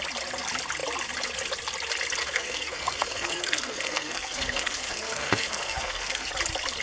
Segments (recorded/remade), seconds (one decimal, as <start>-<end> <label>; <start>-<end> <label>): 0.0-2.2 recorded; 2.2-6.3 remade; 6.3-6.8 recorded